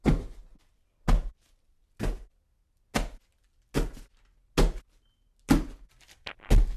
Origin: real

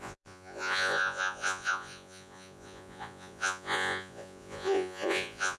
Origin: fake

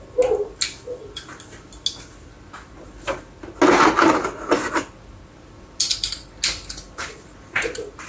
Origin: real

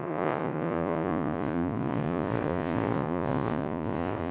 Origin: fake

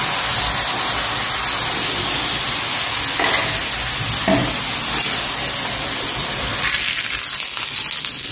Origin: real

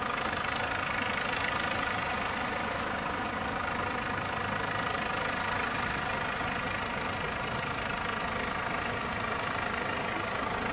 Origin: real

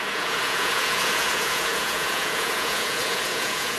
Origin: fake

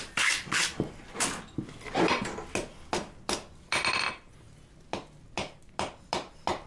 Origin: real